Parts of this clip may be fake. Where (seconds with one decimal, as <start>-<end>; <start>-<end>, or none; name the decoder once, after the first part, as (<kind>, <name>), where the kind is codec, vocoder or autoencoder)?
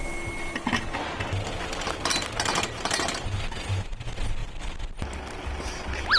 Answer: none